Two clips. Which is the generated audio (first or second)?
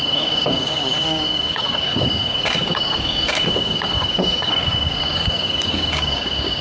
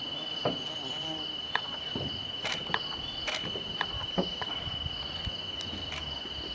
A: first